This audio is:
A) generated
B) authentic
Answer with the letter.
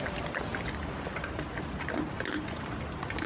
B